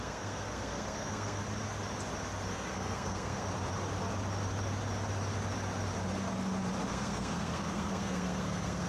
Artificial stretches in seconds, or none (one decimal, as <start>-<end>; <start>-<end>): 0.0-1.4; 2.5-3.4; 6.9-8.9

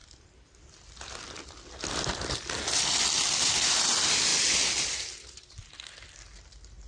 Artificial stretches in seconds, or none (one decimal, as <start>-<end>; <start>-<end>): none

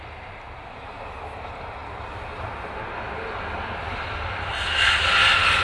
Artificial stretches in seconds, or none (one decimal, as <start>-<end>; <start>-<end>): none

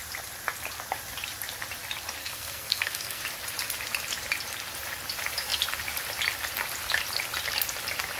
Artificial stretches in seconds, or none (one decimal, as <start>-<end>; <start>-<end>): 2.2-3.2

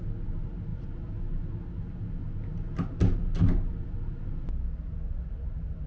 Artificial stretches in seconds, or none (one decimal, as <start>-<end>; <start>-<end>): none

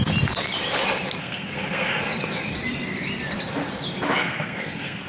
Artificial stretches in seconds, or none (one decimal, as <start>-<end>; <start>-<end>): 1.2-2.0; 4.2-5.1

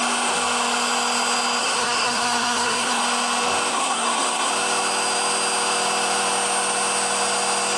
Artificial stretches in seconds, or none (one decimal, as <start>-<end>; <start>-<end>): 1.6-3.0; 3.7-4.5